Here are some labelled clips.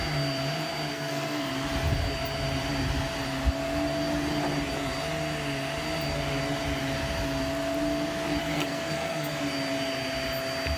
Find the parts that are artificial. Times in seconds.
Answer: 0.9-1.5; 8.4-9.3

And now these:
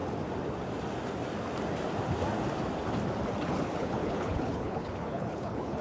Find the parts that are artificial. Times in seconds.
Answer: 3.5-5.8

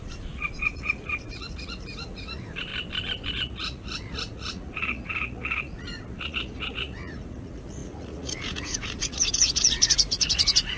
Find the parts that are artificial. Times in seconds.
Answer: 0.0-2.7; 3.3-10.8

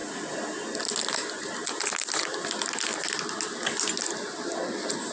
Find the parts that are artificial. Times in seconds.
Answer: none